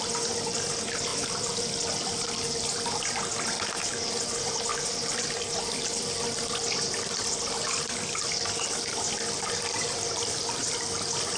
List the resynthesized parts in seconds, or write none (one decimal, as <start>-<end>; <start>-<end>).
none